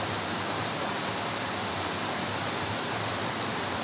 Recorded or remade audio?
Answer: recorded